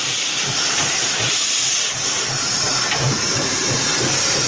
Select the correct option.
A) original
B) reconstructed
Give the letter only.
A